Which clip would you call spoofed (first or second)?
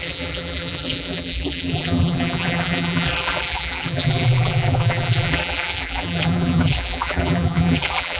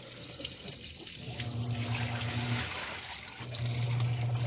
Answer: first